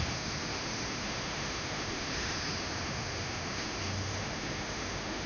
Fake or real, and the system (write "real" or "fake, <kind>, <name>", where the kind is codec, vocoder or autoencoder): fake, autoencoder, DAC-VAE